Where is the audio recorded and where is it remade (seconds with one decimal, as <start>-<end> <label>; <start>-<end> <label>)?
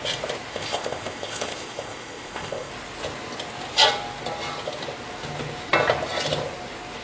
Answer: 0.0-0.5 recorded; 0.5-2.7 remade; 2.7-7.0 recorded